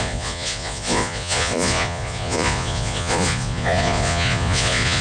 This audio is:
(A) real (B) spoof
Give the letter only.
B